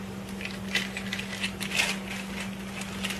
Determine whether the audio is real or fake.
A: real